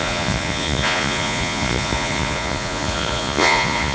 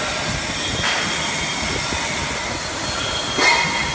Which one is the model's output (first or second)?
first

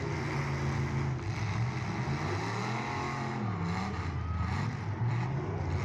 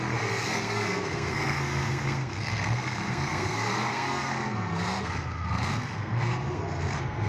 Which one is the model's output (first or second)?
second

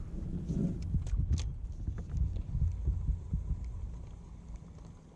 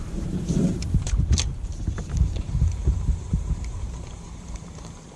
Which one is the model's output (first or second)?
second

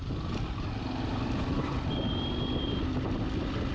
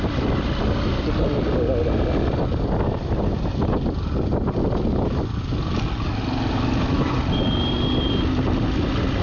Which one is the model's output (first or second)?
first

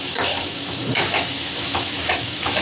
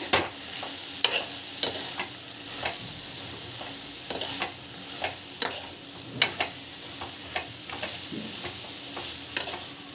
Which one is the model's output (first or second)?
first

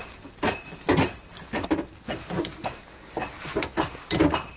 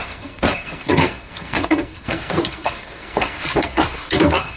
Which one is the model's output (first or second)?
second